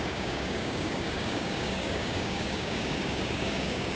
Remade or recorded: remade